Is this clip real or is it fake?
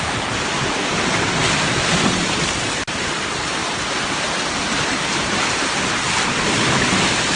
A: real